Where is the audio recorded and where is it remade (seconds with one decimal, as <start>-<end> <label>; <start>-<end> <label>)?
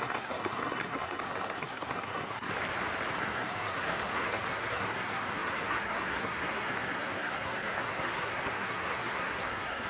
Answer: 0.0-2.5 remade; 2.5-3.2 recorded; 3.2-9.9 remade